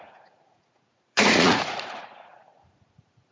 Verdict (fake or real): fake